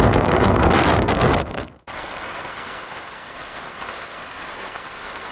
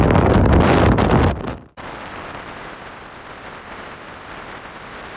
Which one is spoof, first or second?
first